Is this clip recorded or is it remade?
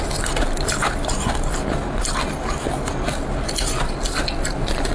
recorded